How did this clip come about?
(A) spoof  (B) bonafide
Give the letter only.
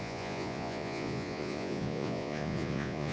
A